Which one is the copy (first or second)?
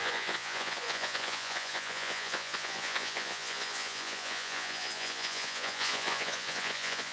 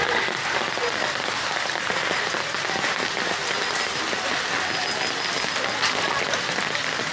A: first